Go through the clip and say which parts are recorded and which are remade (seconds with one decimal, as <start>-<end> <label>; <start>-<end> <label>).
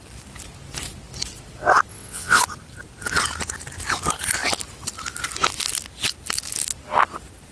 0.0-1.9 recorded; 1.9-2.4 remade; 2.4-7.5 recorded